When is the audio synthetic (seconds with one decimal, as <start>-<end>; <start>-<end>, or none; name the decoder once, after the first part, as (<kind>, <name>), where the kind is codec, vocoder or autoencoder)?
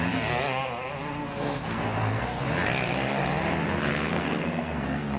1.2-2.4 (codec, SNAC); 3.9-5.2